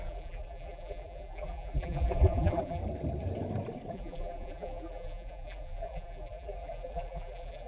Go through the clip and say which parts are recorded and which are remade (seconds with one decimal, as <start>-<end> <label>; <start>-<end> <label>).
0.0-2.8 remade; 2.8-3.9 recorded; 3.9-7.7 remade